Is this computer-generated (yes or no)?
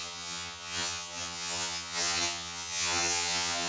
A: yes